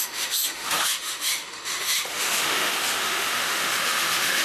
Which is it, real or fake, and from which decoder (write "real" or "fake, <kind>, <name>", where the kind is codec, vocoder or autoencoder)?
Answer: fake, autoencoder, DAC-VAE